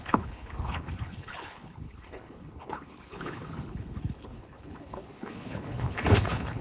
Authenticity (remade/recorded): remade